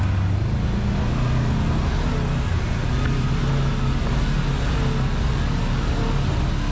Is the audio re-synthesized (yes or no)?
no